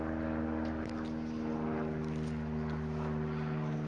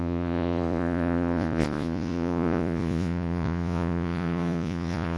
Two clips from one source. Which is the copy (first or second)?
second